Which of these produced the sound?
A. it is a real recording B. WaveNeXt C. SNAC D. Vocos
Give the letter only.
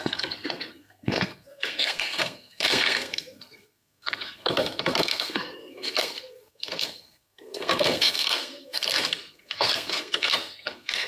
C